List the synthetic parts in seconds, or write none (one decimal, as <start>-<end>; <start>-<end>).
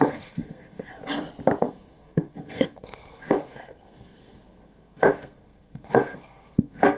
0.0-0.9; 1.6-7.0